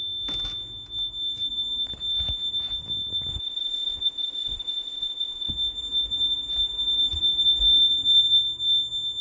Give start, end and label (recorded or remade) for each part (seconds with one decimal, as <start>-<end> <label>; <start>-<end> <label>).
0.0-3.3 recorded; 3.3-5.5 remade; 5.5-9.2 recorded